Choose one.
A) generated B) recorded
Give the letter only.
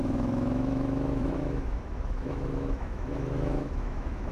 A